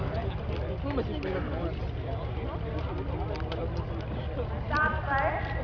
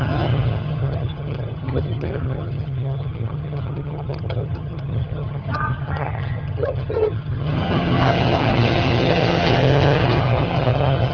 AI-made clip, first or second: second